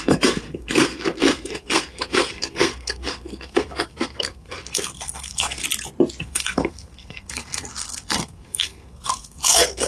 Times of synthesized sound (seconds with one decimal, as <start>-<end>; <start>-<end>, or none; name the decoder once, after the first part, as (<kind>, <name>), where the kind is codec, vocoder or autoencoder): 0.0-5.6 (codec, SNAC); 6.2-9.9